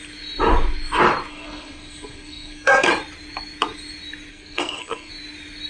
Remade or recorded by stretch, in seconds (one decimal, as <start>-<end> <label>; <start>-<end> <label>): 0.0-1.3 recorded; 1.3-2.9 remade; 2.9-4.3 recorded; 4.3-5.1 remade; 5.1-5.7 recorded